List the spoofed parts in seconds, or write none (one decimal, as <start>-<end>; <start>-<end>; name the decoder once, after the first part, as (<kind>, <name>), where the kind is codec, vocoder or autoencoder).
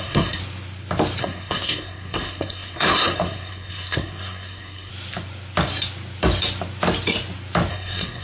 0.0-0.4 (codec, SNAC); 1.2-4.9; 7.7-8.2